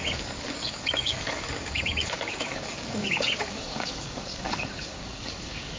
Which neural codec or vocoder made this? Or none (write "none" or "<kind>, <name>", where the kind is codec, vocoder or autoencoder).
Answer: codec, DAC